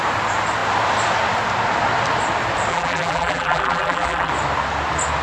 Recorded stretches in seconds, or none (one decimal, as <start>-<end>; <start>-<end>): 0.0-2.7; 4.3-5.2